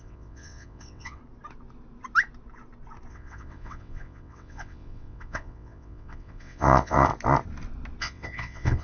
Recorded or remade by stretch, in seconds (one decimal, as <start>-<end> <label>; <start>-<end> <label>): 0.0-1.2 remade; 1.2-3.1 recorded; 3.1-7.1 remade; 7.1-8.0 recorded; 8.0-8.8 remade